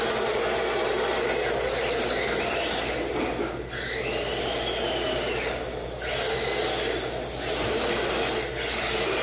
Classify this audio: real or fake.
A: real